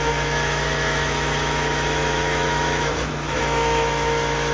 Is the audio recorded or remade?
remade